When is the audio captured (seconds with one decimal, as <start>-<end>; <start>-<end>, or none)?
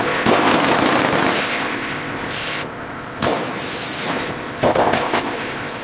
0.5-1.4; 3.3-4.2